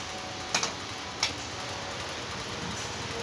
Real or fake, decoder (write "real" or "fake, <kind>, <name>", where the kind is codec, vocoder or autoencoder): real